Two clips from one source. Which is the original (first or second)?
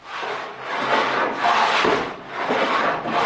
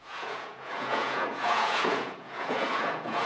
first